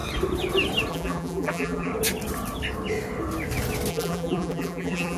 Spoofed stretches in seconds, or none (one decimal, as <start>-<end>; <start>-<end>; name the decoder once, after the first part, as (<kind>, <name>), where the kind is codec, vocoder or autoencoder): 0.9-1.9 (vocoder, BigVGAN v2); 3.9-5.2